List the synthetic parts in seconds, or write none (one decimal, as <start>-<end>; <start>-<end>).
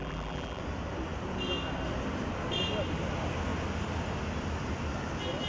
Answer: 0.0-0.6